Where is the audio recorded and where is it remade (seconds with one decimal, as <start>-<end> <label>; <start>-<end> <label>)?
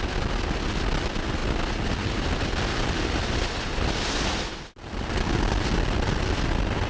0.0-6.9 recorded